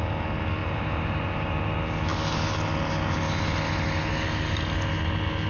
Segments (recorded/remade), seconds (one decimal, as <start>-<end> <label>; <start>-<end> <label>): 0.0-0.6 recorded; 0.6-1.5 remade; 1.5-5.5 recorded